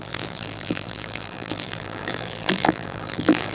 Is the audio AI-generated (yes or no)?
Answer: yes